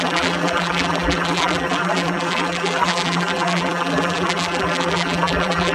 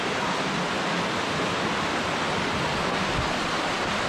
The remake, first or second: first